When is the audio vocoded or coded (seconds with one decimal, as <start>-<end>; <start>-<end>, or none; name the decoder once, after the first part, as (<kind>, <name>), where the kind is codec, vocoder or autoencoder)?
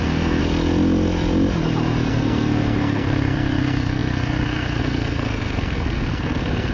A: 0.0-0.4 (codec, SNAC); 2.1-6.7